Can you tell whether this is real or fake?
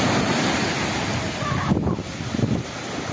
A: real